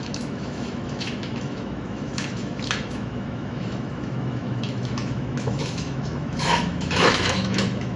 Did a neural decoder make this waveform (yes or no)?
yes